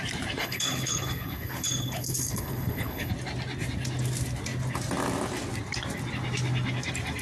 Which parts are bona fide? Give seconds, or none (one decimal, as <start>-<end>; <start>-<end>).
0.0-0.4; 3.1-7.2